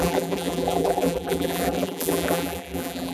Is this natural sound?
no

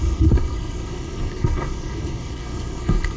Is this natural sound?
no